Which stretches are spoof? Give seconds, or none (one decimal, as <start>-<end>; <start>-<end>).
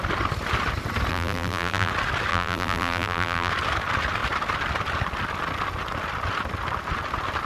1.1-1.9; 2.3-3.5